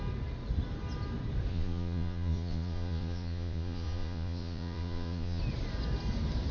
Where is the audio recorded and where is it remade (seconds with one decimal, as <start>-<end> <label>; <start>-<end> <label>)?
0.0-1.5 recorded; 1.5-5.4 remade; 5.4-6.5 recorded